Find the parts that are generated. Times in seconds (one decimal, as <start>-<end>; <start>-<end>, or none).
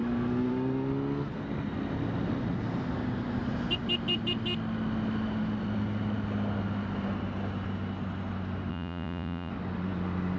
8.7-9.5